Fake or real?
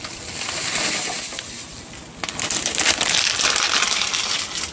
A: real